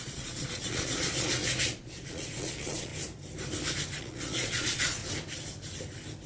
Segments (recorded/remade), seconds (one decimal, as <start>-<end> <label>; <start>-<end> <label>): 0.0-2.9 remade; 2.9-4.0 recorded; 4.0-5.0 remade; 5.0-6.3 recorded